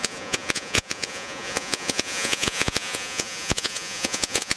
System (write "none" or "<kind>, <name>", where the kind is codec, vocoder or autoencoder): vocoder, Vocos